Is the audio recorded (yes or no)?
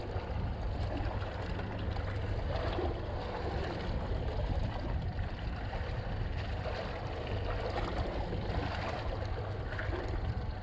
yes